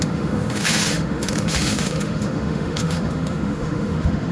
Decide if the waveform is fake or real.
fake